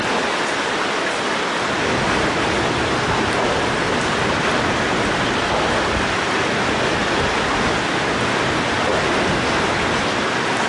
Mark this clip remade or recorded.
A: recorded